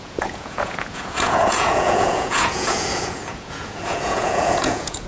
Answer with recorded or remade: remade